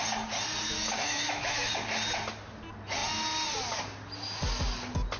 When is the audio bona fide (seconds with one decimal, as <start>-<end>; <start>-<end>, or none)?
0.0-0.7; 1.7-5.2